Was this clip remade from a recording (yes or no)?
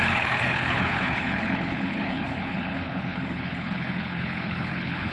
yes